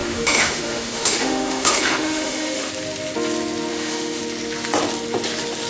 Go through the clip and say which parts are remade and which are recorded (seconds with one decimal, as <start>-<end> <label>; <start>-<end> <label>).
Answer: 0.0-2.7 remade; 2.7-3.7 recorded; 3.7-4.2 remade; 4.2-5.7 recorded